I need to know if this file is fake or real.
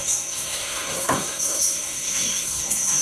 fake